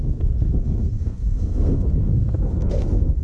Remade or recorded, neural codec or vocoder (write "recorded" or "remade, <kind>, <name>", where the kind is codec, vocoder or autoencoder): remade, codec, SNAC